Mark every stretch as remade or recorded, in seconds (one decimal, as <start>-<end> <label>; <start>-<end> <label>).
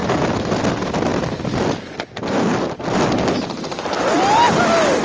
0.0-0.5 remade; 0.5-5.0 recorded